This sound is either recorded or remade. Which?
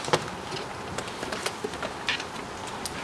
recorded